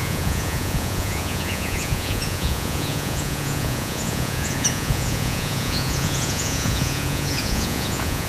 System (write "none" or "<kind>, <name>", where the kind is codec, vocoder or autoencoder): vocoder, Vocos